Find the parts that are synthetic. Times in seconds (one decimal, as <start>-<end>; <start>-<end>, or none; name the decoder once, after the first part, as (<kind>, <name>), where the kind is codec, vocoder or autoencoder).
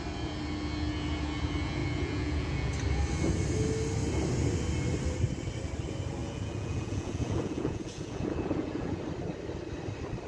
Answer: 1.8-2.7 (vocoder, Vocos); 6.2-9.0